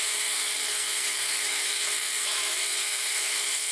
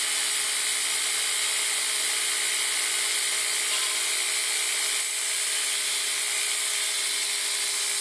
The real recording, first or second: second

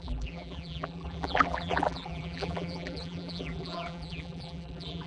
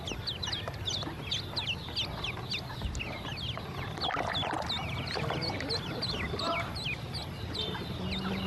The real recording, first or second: second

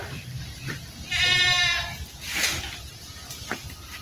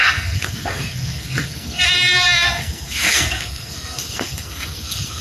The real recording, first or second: first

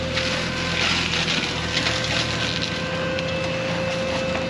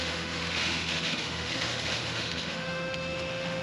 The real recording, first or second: first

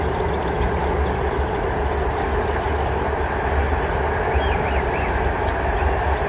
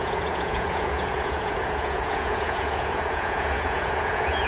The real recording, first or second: first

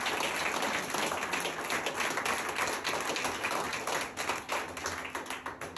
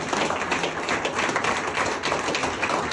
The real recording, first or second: first